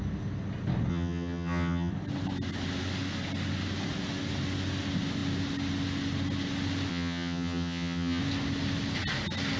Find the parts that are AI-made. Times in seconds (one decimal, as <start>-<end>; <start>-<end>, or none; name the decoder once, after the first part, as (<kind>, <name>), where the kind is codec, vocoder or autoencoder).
0.9-1.9 (vocoder, HiFi-GAN); 6.9-8.2